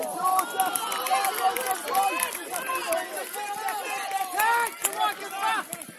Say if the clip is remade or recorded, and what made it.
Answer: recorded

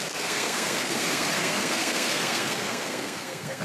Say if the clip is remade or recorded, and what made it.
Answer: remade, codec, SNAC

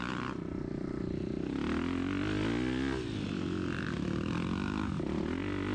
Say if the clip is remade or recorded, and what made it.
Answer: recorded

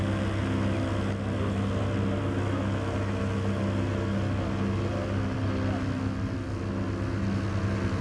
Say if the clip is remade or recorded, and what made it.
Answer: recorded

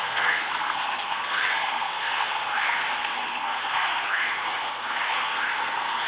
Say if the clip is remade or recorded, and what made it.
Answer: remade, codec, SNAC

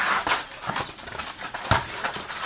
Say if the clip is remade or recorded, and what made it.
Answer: recorded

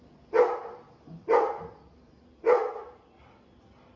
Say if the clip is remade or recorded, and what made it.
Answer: recorded